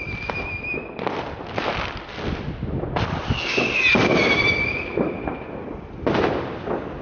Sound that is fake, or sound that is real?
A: real